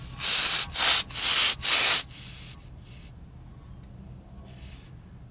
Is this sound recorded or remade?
recorded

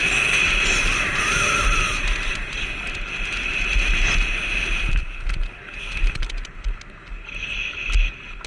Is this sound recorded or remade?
recorded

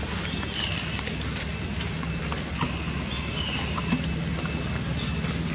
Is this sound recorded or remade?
recorded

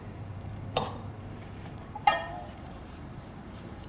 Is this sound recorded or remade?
remade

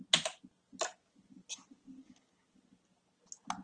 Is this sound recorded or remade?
recorded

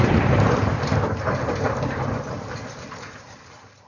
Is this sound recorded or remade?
remade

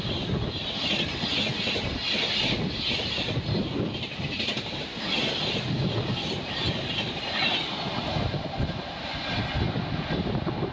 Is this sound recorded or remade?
recorded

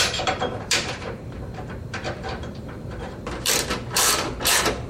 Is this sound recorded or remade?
remade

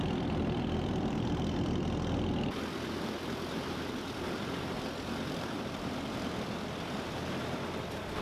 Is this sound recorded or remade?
remade